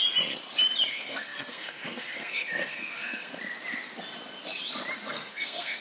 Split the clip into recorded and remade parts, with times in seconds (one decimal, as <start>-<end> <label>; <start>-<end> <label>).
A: 0.0-0.9 recorded; 0.9-3.3 remade; 3.3-5.1 recorded; 5.1-5.8 remade